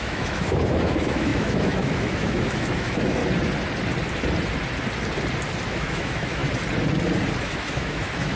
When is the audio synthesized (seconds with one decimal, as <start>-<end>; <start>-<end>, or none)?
0.0-3.2; 5.7-6.4; 7.4-8.4